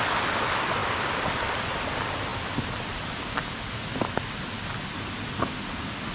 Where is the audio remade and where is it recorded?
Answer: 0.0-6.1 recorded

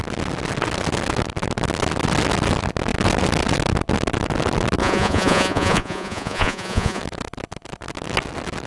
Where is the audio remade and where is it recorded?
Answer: 0.0-4.8 recorded; 4.8-7.0 remade; 7.0-8.7 recorded

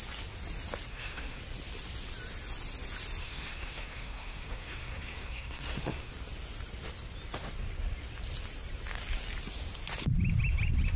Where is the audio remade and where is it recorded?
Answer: 0.0-0.9 recorded; 0.9-1.4 remade; 1.4-3.2 recorded; 3.2-6.1 remade; 6.1-11.0 recorded

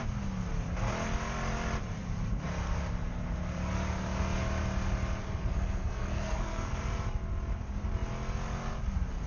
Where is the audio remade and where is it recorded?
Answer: 0.0-5.2 recorded; 5.2-6.8 remade; 6.8-9.3 recorded

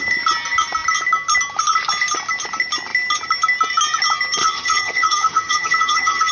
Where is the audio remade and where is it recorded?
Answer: 0.0-4.4 recorded; 4.4-6.3 remade

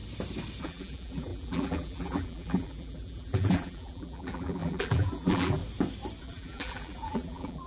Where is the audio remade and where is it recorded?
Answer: 0.0-0.6 recorded; 0.6-5.6 remade; 5.6-6.2 recorded; 6.2-7.7 remade

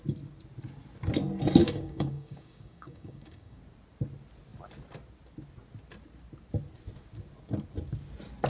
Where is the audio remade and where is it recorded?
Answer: 0.0-1.6 recorded; 1.6-3.6 remade; 3.6-8.5 recorded

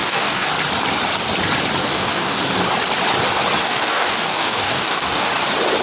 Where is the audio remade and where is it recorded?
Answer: 0.0-0.5 remade; 0.5-1.8 recorded; 1.8-2.4 remade; 2.4-3.6 recorded; 3.6-5.3 remade; 5.3-5.8 recorded